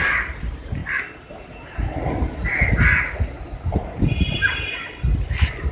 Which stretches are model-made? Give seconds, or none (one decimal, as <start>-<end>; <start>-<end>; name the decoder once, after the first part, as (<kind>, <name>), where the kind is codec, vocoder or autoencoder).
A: 0.0-0.8 (vocoder, BigVGAN v2); 1.3-2.4; 4.2-5.7